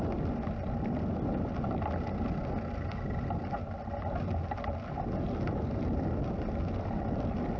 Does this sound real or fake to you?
real